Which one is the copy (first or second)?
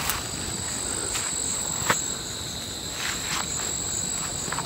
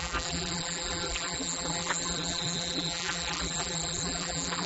second